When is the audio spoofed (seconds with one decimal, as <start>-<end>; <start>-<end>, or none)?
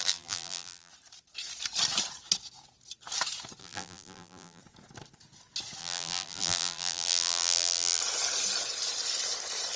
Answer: 0.0-0.9; 3.6-4.6; 5.8-8.0